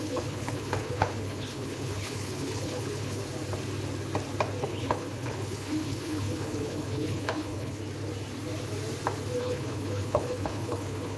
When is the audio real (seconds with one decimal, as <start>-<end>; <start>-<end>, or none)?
3.2-4.6; 7.8-9.4